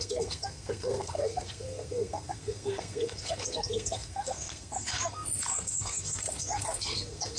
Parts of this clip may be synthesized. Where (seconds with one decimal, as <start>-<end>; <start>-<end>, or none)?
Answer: 0.0-7.4